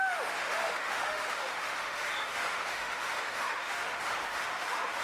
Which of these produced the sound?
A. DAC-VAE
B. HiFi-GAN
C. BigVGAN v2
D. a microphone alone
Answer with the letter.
A